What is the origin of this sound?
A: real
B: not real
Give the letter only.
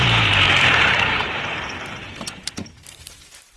B